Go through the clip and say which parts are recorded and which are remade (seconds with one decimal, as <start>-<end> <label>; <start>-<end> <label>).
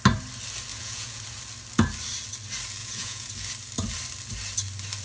0.0-0.7 recorded; 0.7-1.2 remade; 1.2-2.8 recorded; 2.8-3.3 remade; 3.3-5.0 recorded